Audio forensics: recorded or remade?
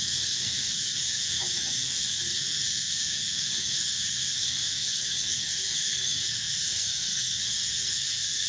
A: remade